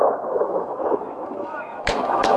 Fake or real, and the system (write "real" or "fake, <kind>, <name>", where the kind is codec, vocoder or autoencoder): fake, autoencoder, DAC-VAE